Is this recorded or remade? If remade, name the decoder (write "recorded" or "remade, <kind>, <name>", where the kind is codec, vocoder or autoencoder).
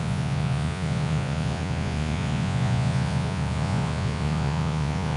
remade, vocoder, Vocos